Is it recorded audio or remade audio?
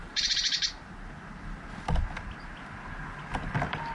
recorded